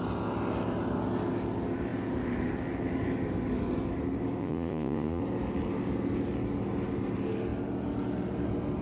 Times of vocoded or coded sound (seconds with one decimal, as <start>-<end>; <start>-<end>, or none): 4.4-5.2